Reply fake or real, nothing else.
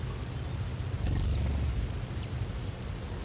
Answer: real